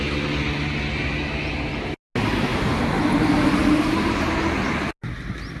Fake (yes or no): no